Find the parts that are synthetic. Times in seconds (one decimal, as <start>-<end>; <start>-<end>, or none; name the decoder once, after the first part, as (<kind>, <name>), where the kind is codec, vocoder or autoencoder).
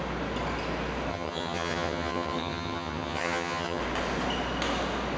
1.1-3.8 (vocoder, HiFi-GAN)